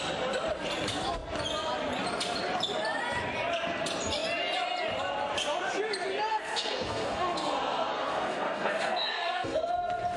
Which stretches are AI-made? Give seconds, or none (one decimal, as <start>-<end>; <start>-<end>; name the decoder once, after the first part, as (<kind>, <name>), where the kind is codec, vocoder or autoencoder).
6.3-9.7 (codec, SNAC)